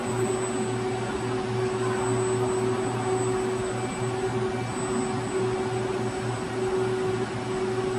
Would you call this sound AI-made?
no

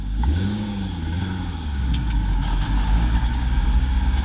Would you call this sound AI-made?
yes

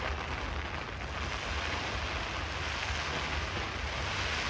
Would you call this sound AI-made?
no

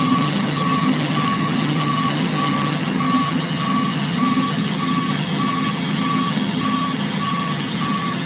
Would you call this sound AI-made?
yes